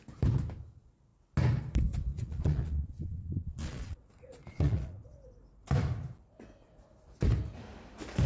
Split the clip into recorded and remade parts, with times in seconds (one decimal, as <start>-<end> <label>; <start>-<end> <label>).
0.0-2.1 recorded; 2.1-5.3 remade; 5.3-8.3 recorded